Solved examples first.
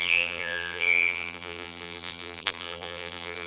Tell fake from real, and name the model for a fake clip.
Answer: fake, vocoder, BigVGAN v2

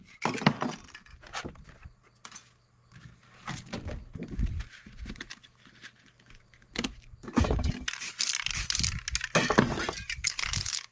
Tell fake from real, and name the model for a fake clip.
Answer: real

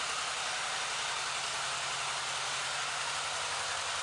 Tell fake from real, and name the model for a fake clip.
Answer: real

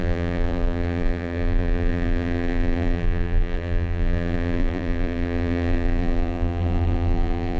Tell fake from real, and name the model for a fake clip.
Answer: fake, vocoder, BigVGAN v2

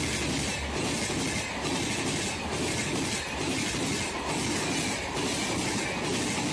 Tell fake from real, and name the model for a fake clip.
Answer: real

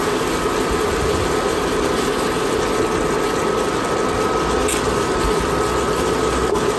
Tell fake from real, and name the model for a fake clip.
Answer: real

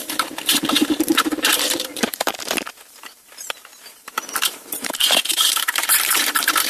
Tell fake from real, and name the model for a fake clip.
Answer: fake, vocoder, BigVGAN v2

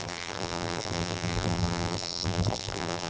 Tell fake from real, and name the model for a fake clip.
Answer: fake, vocoder, BigVGAN v2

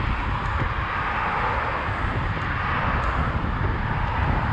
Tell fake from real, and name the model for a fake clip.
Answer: real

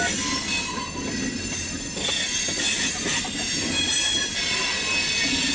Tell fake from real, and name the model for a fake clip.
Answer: real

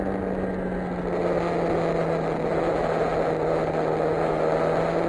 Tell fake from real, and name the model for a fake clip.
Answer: real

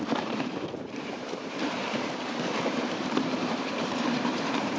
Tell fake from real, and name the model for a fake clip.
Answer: fake, vocoder, BigVGAN v2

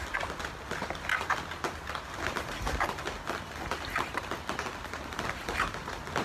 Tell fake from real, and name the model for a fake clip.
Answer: real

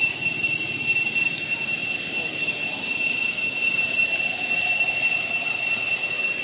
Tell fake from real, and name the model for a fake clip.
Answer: real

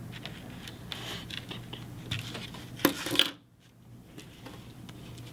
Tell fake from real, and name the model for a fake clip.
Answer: real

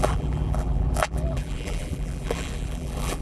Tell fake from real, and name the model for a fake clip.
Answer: fake, vocoder, BigVGAN v2